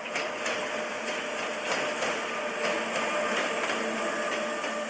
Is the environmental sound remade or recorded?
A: recorded